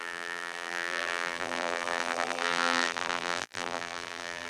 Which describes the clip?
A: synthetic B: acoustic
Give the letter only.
A